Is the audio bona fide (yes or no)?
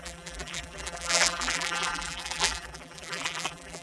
no